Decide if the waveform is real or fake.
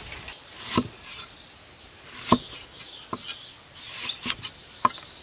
real